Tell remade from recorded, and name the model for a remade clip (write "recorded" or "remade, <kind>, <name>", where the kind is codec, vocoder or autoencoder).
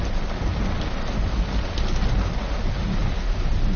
recorded